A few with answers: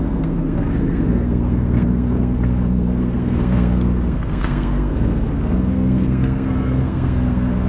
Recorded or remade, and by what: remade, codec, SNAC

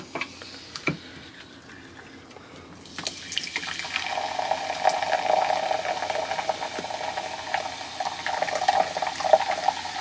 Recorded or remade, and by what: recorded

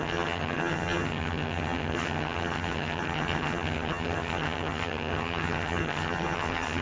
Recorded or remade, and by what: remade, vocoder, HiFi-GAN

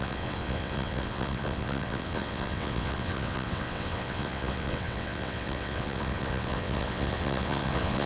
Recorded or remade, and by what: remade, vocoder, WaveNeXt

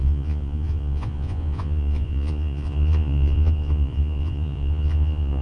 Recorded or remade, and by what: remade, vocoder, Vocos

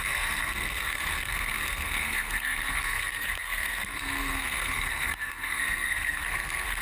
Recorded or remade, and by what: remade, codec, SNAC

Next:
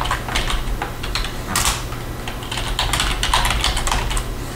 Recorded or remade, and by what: recorded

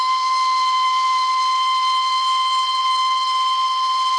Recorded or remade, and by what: recorded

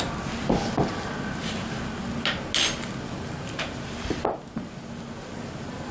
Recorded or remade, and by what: recorded